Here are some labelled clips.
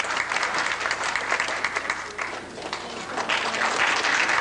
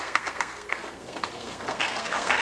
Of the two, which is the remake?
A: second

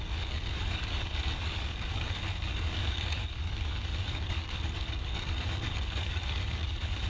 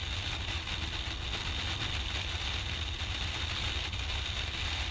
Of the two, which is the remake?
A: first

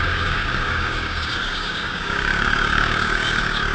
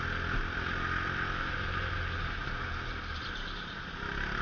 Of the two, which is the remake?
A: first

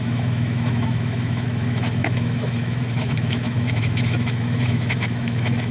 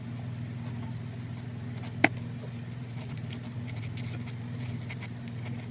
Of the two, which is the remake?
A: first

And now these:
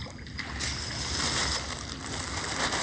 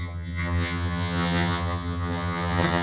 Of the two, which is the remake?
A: second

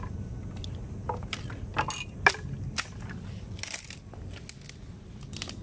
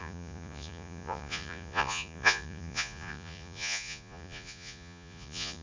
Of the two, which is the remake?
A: second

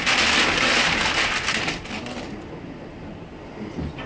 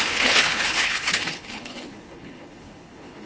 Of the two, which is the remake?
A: second